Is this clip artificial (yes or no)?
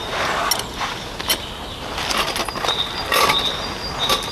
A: no